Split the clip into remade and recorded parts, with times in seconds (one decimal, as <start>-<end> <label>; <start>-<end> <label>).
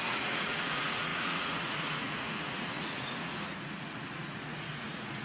0.0-5.2 remade